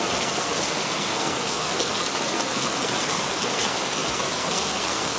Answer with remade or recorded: remade